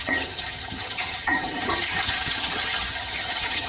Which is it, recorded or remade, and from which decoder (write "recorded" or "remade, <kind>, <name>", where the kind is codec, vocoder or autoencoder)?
remade, vocoder, HiFi-GAN